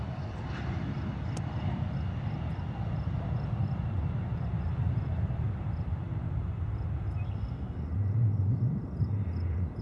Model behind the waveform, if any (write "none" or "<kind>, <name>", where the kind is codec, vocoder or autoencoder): none